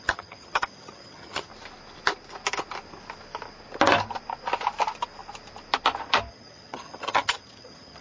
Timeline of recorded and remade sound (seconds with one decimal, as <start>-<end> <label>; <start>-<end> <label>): 0.0-1.5 remade; 1.5-6.3 recorded; 6.3-8.0 remade